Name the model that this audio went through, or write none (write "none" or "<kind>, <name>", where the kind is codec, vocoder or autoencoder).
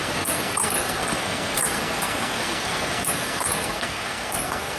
codec, SNAC